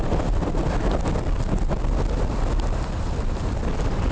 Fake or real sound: real